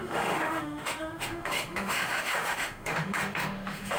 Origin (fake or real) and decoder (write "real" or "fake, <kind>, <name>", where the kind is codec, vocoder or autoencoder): fake, autoencoder, DAC-VAE